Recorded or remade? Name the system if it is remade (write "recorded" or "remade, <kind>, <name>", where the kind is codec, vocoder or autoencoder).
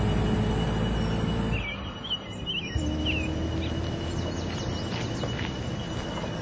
recorded